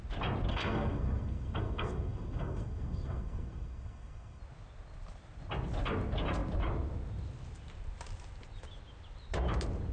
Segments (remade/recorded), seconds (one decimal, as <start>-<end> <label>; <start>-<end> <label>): 0.0-0.5 recorded; 0.5-4.4 remade; 4.4-9.9 recorded